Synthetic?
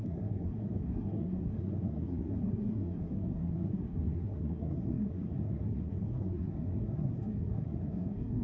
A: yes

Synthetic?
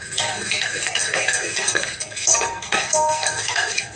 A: yes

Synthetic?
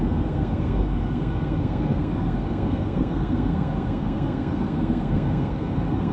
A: yes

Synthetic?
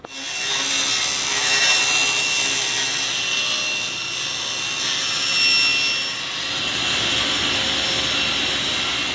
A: no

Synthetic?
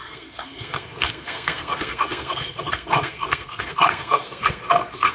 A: yes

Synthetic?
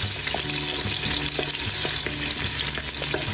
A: no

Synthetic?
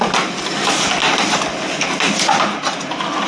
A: no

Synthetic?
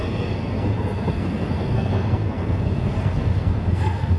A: yes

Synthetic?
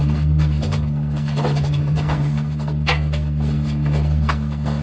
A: yes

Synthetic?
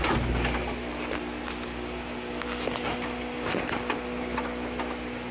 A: no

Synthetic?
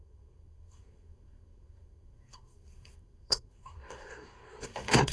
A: yes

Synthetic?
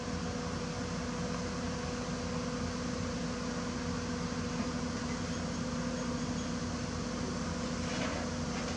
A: no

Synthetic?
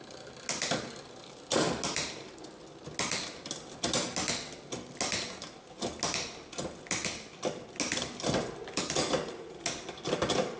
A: no